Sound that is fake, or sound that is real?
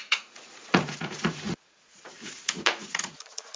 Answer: fake